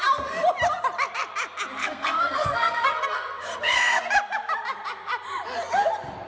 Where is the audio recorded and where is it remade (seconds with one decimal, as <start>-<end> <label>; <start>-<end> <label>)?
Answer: 0.0-1.8 recorded; 1.8-4.0 remade; 4.0-6.3 recorded